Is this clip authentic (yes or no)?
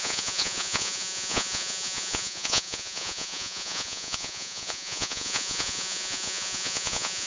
no